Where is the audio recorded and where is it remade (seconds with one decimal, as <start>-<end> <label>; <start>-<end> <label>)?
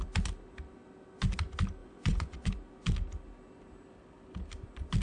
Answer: 0.0-1.8 recorded; 1.8-2.5 remade; 2.5-5.0 recorded